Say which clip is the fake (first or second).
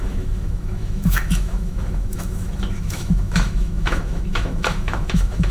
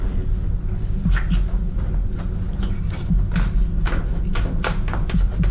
first